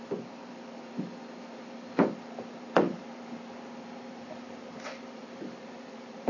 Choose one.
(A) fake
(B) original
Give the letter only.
A